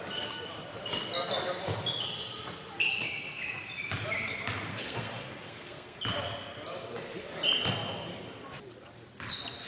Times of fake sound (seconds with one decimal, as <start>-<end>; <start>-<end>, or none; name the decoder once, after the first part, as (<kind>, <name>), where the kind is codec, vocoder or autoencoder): 4.7-6.0 (codec, SNAC)